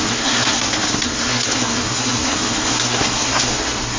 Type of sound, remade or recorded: remade